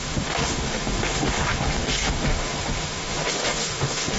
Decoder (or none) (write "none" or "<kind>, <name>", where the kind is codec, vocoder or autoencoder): autoencoder, DAC-VAE